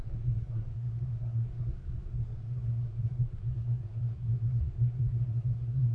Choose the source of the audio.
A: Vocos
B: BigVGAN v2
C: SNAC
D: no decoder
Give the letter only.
C